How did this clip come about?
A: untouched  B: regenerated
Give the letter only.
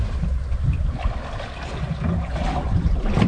A